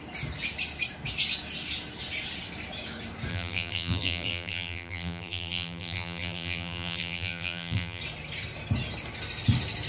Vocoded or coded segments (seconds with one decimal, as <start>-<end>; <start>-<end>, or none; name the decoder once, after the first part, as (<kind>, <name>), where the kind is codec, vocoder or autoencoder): 3.3-8.0 (vocoder, BigVGAN v2)

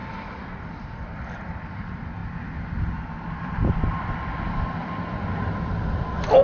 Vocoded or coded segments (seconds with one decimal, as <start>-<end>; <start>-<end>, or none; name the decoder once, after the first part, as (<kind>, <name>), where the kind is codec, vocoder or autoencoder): 0.8-2.2 (vocoder, BigVGAN v2); 3.3-6.4

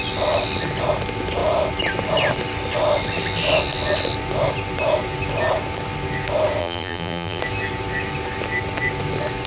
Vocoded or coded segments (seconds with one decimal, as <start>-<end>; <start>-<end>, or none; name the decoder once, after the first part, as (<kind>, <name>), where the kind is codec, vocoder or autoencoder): 6.6-7.4 (vocoder, BigVGAN v2)

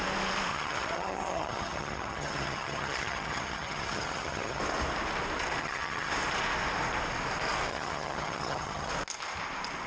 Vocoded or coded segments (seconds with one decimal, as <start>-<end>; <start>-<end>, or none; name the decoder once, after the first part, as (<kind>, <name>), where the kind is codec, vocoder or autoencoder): 0.5-4.6 (vocoder, HiFi-GAN); 5.6-6.1; 7.7-8.9

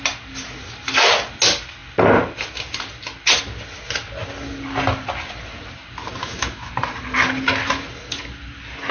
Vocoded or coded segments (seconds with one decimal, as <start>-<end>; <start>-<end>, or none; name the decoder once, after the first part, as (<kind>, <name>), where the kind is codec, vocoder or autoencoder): 6.2-6.7 (autoencoder, DAC-VAE)